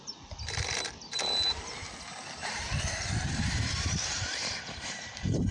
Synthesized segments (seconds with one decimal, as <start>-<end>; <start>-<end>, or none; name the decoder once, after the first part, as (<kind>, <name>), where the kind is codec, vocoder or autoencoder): 2.4-5.5 (vocoder, BigVGAN v2)